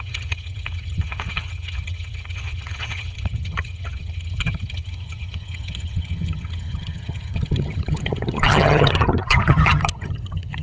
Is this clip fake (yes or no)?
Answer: yes